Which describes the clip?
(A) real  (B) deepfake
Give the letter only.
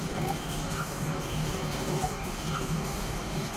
B